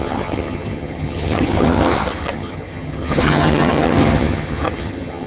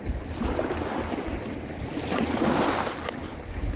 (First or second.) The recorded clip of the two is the second